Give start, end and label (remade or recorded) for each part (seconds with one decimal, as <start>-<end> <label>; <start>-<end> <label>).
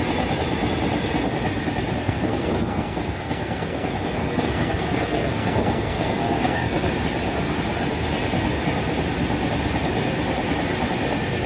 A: 0.0-2.0 recorded; 2.0-6.9 remade; 6.9-11.5 recorded